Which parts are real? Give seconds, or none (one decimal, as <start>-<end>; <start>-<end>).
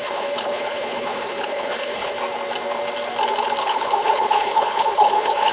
2.2-3.6